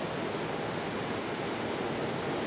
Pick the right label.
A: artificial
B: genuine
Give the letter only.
B